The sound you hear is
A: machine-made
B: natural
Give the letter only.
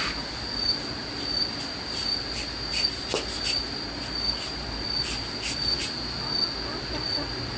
B